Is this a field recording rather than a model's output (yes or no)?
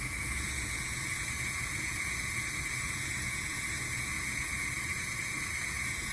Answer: no